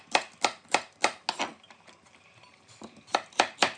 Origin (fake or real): real